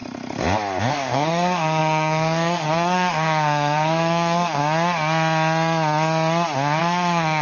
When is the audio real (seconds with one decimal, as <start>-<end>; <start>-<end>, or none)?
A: 0.0-0.9; 4.6-6.8